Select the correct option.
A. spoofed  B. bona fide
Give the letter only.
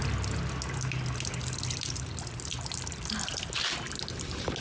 B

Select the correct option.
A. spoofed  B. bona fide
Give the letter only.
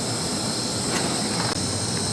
B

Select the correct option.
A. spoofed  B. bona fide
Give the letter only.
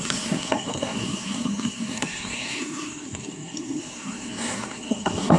A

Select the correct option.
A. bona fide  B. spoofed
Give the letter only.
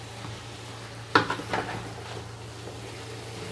A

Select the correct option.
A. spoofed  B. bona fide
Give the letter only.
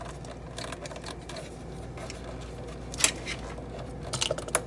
B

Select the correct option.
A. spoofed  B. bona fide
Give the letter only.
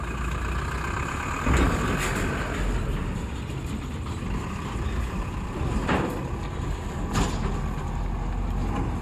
B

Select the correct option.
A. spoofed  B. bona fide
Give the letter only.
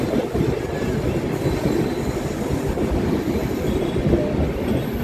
B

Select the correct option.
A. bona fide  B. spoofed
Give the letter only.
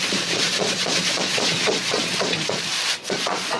B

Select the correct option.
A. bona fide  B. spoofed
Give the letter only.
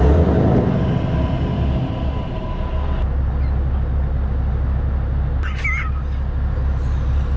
A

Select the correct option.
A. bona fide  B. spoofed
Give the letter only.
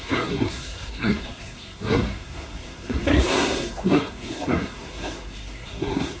B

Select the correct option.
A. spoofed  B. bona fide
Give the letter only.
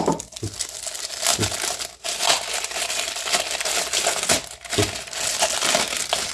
B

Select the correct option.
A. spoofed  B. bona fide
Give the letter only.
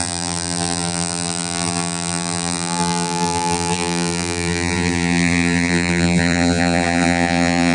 A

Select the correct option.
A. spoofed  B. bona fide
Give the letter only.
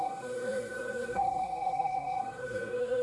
A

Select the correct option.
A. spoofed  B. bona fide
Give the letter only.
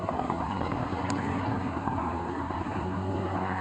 A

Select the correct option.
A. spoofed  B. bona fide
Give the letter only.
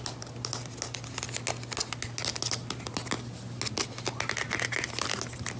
B